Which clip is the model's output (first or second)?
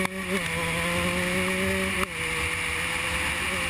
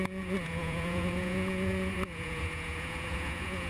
second